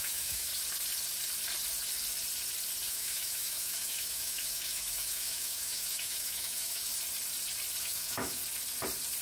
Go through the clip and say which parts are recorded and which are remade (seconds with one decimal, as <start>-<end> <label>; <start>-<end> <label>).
0.0-0.5 remade; 0.5-2.9 recorded; 2.9-6.9 remade; 6.9-7.8 recorded; 7.8-8.4 remade; 8.4-9.2 recorded